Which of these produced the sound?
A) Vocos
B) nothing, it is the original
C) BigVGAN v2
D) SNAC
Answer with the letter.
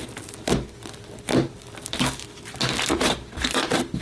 C